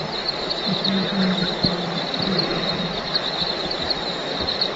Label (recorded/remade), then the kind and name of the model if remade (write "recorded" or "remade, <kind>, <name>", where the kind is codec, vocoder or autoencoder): remade, vocoder, BigVGAN v2